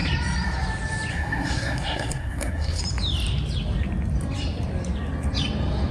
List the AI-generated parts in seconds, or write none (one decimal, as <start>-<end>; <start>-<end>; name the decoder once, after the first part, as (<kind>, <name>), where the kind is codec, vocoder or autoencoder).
1.1-2.8 (codec, SNAC)